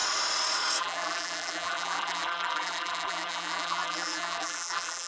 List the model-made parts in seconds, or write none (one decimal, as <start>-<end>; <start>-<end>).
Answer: 0.8-5.1

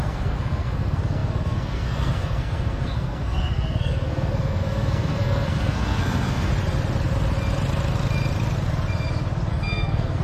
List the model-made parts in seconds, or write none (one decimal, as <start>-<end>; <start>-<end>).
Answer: 0.0-6.5; 9.5-10.2

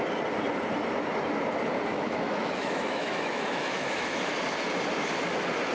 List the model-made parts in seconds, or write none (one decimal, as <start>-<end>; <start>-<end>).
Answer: 1.9-4.3

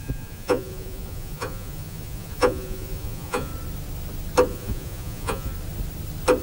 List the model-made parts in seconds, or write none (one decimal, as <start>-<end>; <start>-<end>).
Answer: 0.0-3.5; 4.5-5.5